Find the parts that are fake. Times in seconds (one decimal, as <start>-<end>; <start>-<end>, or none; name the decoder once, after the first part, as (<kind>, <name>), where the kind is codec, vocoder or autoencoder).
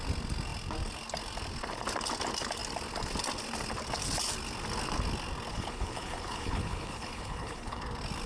5.5-7.8 (codec, HILCodec)